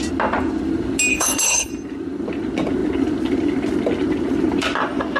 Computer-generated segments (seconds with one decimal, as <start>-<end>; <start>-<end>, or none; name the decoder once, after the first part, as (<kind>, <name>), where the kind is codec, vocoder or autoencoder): 1.1-1.7 (codec, HILCodec)